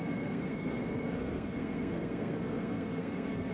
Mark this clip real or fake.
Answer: fake